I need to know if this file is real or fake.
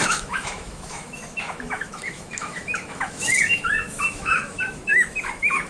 fake